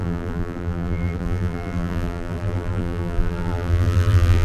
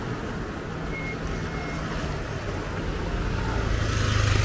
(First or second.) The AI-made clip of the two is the first